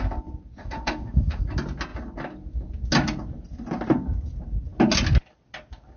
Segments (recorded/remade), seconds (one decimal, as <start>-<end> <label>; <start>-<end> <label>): 0.0-0.6 recorded; 0.6-1.4 remade; 1.4-6.0 recorded